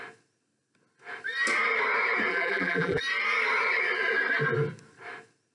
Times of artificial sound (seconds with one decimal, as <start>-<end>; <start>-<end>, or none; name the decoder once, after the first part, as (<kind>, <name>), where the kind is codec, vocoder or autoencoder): 2.3-3.0 (vocoder, BigVGAN v2)